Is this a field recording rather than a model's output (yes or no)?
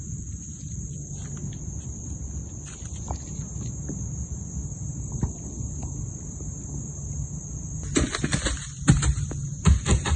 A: yes